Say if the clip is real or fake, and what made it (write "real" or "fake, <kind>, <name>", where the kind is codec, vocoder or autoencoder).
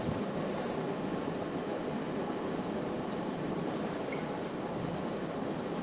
real